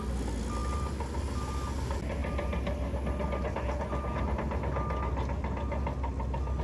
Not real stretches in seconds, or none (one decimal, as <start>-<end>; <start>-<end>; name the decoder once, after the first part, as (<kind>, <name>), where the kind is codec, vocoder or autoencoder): none